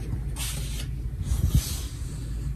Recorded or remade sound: recorded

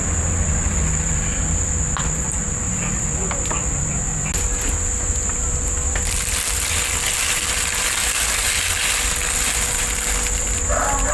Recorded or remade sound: recorded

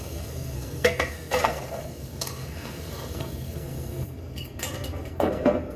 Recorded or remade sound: remade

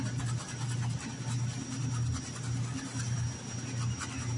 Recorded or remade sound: recorded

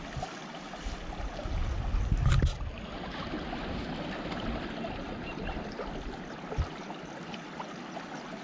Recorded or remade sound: recorded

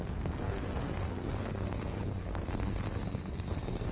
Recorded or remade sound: remade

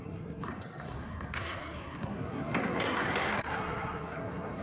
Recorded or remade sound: remade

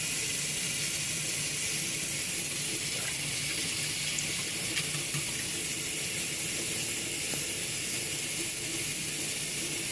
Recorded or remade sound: recorded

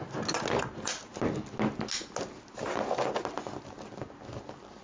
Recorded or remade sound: recorded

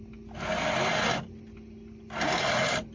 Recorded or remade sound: recorded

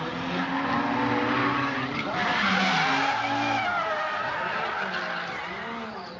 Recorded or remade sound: recorded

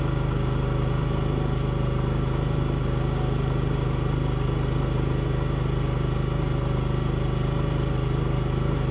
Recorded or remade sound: recorded